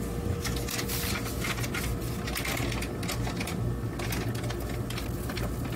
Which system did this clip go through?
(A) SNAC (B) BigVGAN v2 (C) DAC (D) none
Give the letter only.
D